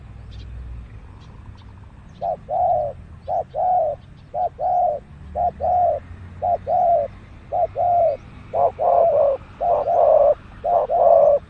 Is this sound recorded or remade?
remade